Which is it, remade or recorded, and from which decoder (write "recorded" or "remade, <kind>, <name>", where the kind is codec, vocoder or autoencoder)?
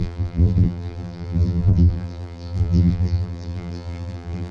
remade, vocoder, BigVGAN v2